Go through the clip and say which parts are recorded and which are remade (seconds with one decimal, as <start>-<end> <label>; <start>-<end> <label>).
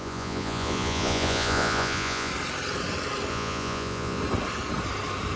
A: 0.0-2.3 remade; 2.3-3.3 recorded; 3.3-4.2 remade; 4.2-5.4 recorded